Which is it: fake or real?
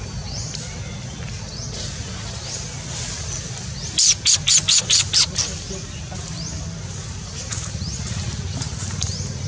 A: real